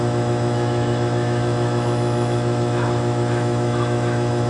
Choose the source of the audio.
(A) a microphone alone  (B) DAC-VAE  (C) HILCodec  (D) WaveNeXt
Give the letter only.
B